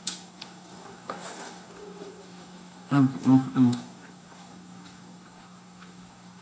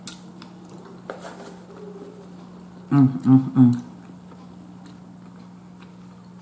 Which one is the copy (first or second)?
first